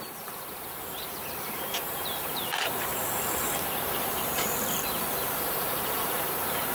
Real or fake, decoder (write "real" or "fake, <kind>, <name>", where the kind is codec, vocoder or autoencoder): fake, vocoder, BigVGAN v2